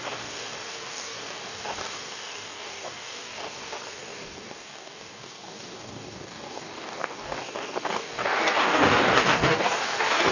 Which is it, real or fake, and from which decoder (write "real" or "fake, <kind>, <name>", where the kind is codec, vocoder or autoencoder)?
fake, codec, DAC